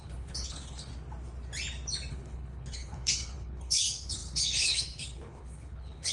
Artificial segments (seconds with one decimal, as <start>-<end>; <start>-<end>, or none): 0.0-0.9; 2.1-6.1